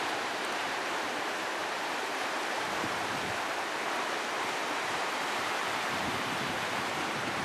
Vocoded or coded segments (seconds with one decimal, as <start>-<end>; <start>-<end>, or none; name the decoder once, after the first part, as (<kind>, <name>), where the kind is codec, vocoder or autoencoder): 0.0-3.0 (vocoder, BigVGAN v2); 4.9-7.4